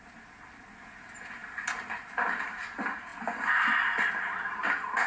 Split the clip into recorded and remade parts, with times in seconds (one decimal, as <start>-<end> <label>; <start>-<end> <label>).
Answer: 0.0-5.1 recorded